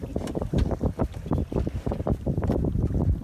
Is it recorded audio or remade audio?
recorded